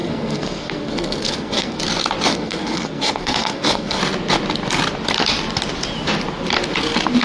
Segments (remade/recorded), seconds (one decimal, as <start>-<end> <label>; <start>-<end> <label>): 0.0-1.8 remade; 1.8-2.3 recorded; 2.3-4.0 remade; 4.0-7.2 recorded